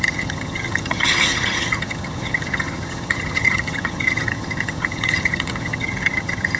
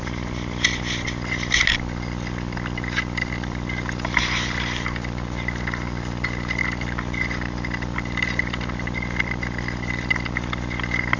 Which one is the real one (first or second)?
second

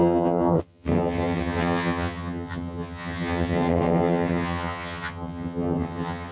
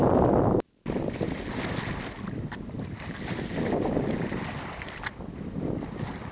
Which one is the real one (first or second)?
second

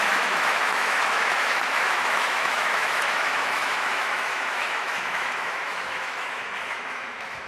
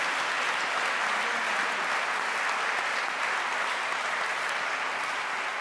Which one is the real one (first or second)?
second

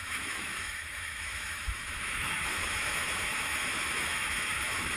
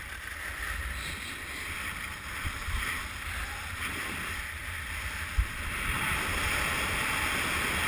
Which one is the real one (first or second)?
second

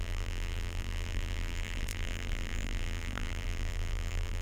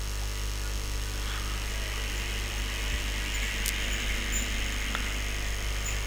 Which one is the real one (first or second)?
second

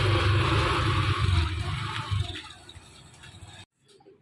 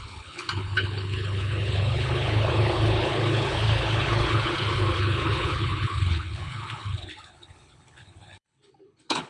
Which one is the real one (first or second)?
first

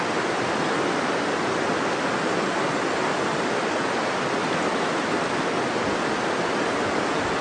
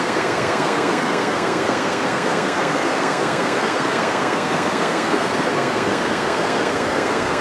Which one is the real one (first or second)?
first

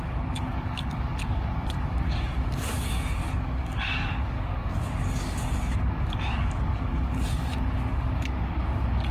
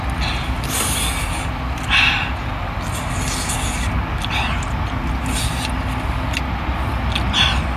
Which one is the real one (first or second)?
second